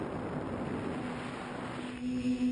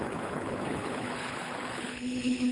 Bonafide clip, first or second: first